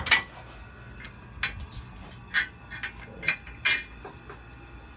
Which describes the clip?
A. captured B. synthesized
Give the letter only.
A